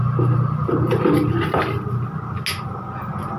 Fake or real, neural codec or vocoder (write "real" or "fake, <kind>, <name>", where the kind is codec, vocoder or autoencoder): real